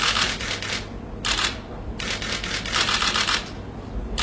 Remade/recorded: recorded